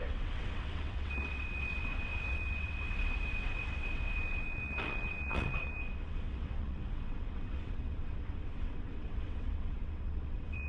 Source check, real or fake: fake